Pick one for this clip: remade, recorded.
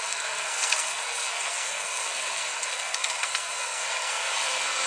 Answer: remade